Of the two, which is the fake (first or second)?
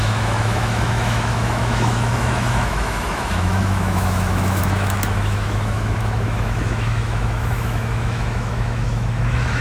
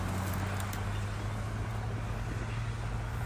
first